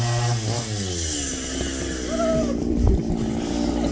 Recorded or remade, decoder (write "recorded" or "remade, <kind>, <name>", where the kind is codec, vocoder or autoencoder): recorded